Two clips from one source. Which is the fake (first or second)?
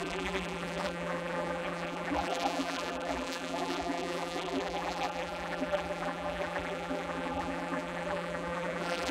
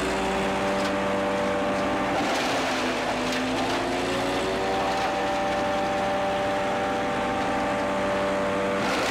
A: first